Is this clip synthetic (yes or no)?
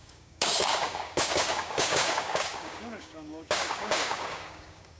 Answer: yes